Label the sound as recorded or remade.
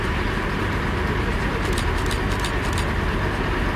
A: recorded